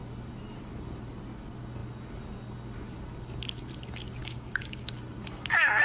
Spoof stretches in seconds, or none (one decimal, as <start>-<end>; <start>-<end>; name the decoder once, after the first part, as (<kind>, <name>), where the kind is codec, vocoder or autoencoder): 4.2-4.9 (codec, DAC)